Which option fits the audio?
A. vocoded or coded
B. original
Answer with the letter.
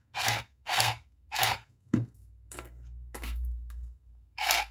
A